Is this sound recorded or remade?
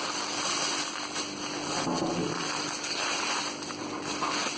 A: recorded